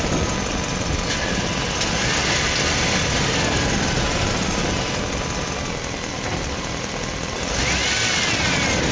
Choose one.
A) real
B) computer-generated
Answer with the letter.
A